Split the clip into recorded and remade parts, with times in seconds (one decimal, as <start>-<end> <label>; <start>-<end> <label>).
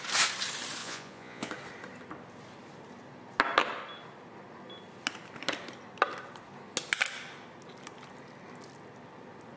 0.0-0.8 recorded; 0.8-1.5 remade; 1.5-9.6 recorded